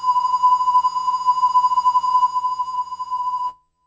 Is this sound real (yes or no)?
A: no